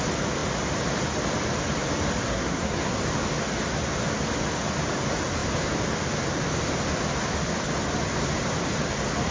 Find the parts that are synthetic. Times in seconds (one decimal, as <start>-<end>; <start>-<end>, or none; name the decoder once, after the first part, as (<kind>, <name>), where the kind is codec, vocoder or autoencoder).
2.3-3.0 (codec, SNAC)